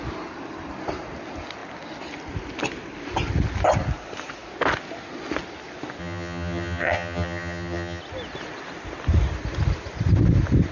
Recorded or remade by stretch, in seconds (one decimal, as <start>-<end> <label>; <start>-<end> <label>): 0.0-6.0 recorded; 6.0-8.0 remade; 8.0-10.7 recorded